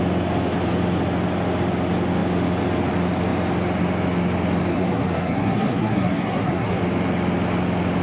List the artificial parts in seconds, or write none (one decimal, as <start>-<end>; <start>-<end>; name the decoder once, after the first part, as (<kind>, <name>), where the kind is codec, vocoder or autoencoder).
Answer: 4.7-6.8 (codec, SNAC)